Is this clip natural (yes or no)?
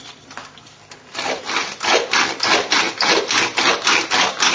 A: yes